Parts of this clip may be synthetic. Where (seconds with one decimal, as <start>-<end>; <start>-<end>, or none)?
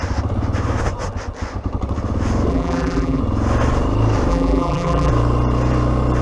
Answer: 2.5-3.2; 4.3-5.1